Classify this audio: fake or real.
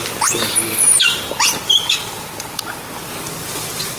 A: real